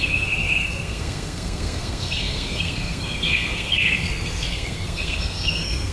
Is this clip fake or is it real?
fake